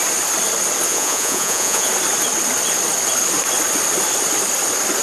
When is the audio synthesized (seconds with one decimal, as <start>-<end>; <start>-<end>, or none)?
0.9-1.9